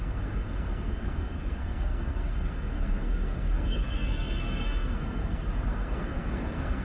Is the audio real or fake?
fake